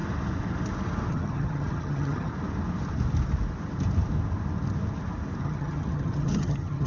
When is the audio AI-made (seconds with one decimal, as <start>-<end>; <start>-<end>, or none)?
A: 1.1-2.3; 5.4-6.9